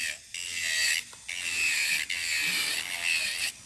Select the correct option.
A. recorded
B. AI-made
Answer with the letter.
A